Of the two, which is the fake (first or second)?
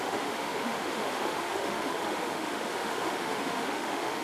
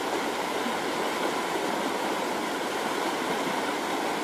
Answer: first